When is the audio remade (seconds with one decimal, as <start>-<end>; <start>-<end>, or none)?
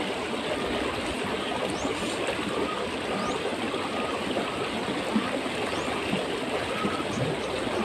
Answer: none